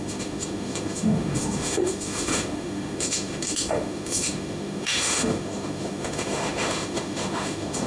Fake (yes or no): yes